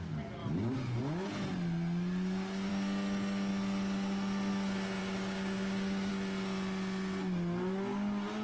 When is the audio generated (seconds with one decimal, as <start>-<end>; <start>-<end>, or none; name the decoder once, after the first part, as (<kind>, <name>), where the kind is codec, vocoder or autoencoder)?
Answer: 5.0-6.1 (codec, DAC)